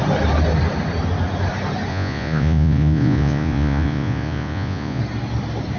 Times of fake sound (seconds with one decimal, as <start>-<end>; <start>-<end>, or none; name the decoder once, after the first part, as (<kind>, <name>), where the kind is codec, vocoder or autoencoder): 1.9-5.0 (vocoder, Vocos)